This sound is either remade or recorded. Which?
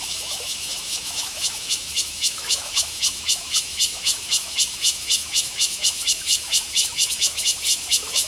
remade